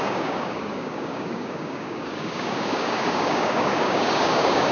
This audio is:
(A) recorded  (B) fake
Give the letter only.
B